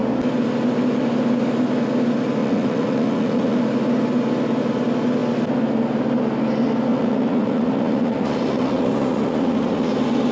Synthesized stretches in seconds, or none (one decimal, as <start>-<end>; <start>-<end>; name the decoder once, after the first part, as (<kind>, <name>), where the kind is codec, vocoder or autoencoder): 2.4-3.6 (vocoder, Vocos); 6.9-9.9